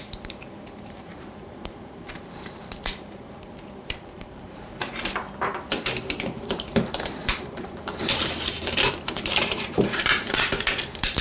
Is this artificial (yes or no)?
yes